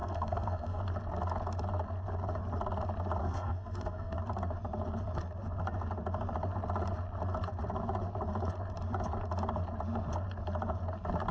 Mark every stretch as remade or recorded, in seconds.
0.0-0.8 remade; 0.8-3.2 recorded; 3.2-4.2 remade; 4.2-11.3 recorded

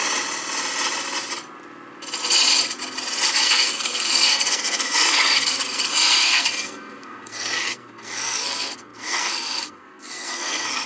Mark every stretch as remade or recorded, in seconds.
0.0-3.3 recorded; 3.3-10.9 remade

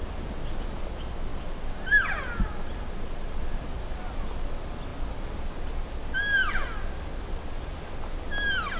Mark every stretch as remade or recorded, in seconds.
0.0-8.8 recorded

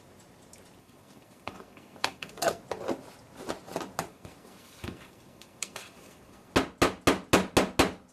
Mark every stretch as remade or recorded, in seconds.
0.0-0.8 recorded; 0.8-2.6 remade; 2.6-4.1 recorded; 4.1-6.5 remade; 6.5-8.1 recorded

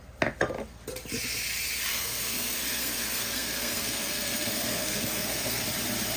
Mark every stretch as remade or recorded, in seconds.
0.0-1.9 recorded; 1.9-5.6 remade; 5.6-6.2 recorded